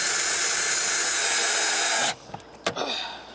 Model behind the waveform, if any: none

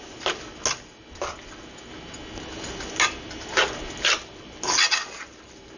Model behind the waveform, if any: none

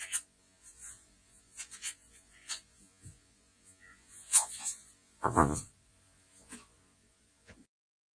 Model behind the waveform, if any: vocoder, Vocos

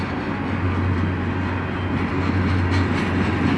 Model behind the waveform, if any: none